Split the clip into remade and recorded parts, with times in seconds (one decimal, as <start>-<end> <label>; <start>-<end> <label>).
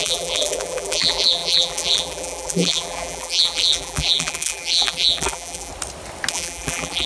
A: 0.0-5.7 remade; 5.7-6.3 recorded; 6.3-7.1 remade